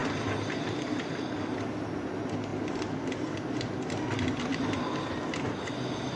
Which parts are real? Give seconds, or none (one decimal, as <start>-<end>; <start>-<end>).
0.7-6.2